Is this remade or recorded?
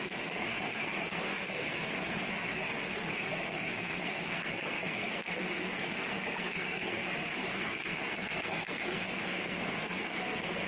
remade